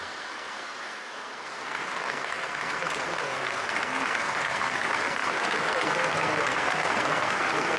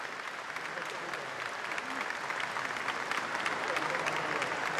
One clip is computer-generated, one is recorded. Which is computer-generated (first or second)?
first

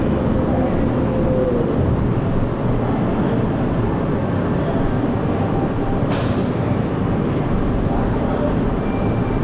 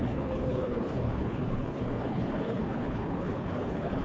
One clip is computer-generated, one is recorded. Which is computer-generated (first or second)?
second